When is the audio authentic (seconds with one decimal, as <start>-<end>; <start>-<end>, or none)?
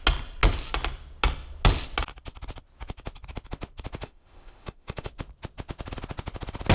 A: 0.0-4.0; 5.1-6.7